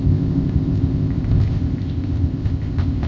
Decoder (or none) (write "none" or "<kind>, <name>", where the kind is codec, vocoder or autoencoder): codec, ZipCodec